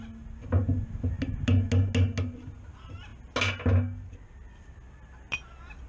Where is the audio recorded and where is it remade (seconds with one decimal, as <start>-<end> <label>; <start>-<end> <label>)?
0.0-5.9 recorded